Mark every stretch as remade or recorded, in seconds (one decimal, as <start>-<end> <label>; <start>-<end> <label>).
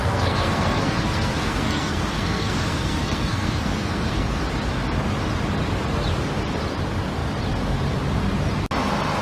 0.0-4.4 remade; 4.4-9.2 recorded